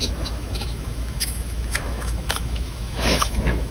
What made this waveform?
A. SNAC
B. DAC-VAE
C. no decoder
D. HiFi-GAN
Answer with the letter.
B